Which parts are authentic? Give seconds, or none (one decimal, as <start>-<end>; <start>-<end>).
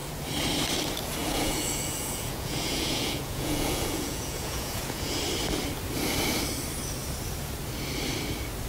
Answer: 0.0-1.2; 5.2-8.7